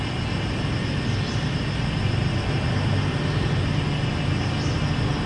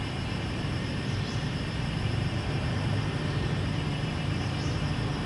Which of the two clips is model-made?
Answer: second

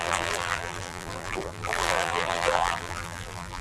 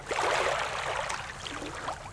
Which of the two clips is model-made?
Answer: first